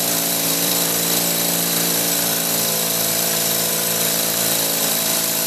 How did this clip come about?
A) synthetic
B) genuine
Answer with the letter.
A